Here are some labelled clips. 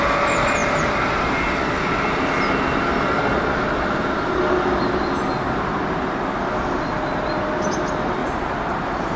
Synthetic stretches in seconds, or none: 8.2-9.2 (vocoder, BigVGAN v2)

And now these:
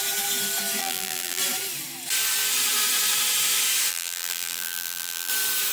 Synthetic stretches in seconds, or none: 0.8-1.4 (vocoder, BigVGAN v2); 3.9-5.3

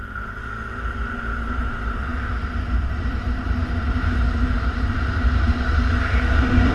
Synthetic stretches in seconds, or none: 0.0-6.7 (vocoder, BigVGAN v2)